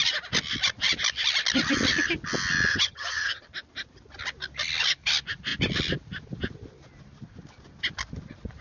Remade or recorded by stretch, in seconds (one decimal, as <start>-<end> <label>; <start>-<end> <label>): 0.0-2.7 recorded; 2.7-3.4 remade; 3.4-8.6 recorded